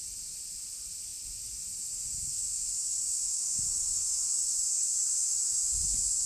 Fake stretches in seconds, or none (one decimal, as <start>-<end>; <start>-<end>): 2.3-5.7